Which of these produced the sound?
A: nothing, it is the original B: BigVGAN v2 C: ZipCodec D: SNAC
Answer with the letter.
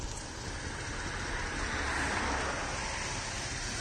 A